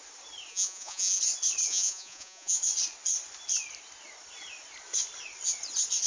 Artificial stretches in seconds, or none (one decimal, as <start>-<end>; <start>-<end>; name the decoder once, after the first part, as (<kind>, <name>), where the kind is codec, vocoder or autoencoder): 0.5-1.2 (vocoder, Vocos); 1.7-2.6